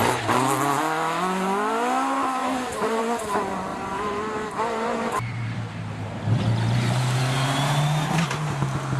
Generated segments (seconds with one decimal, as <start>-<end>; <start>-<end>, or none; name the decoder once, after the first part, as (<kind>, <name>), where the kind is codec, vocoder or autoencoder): 2.4-3.0 (vocoder, BigVGAN v2); 3.7-6.4